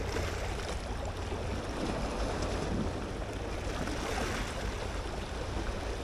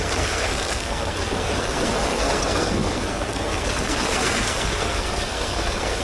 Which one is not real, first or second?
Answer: second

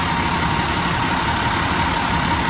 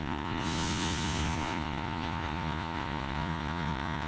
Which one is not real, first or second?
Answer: second